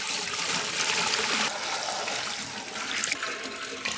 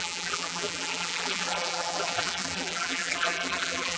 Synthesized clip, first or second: second